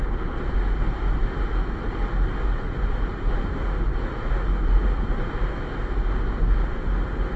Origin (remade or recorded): recorded